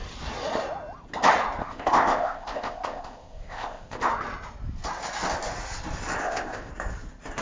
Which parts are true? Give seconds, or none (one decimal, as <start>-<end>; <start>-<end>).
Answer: 0.0-1.6; 4.1-6.2; 6.7-7.4